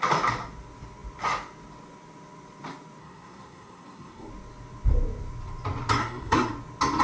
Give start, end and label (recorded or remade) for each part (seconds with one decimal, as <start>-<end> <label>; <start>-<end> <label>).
0.0-3.0 recorded; 3.0-4.3 remade; 4.3-6.0 recorded; 6.0-6.5 remade; 6.5-7.0 recorded